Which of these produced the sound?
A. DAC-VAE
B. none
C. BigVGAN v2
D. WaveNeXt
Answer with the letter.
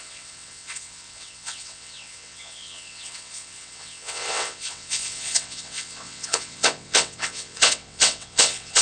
D